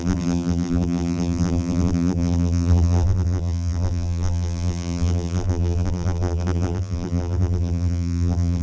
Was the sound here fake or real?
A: fake